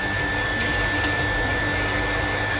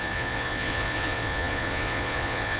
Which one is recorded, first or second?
first